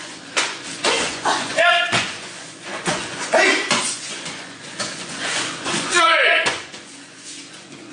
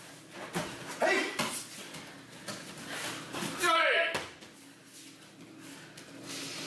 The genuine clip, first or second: second